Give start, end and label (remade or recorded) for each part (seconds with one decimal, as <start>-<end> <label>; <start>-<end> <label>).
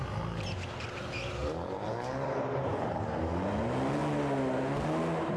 0.0-1.4 recorded; 1.4-3.1 remade; 3.1-5.4 recorded